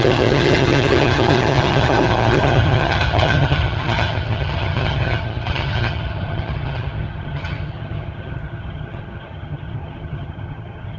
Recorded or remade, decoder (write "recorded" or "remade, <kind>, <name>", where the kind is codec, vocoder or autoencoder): remade, vocoder, HiFi-GAN